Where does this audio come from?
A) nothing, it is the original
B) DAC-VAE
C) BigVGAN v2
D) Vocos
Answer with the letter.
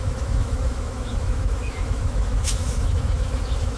B